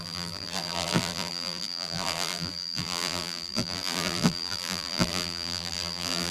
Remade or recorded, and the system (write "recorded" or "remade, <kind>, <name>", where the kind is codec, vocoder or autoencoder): remade, vocoder, BigVGAN v2